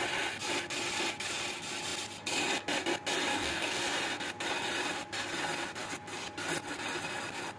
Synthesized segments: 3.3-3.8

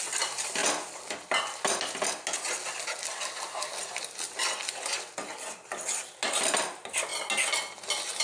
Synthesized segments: none

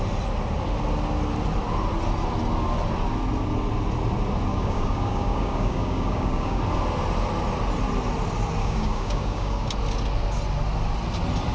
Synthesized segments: 4.5-6.6; 8.6-9.7